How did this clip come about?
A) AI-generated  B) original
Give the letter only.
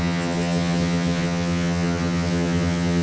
A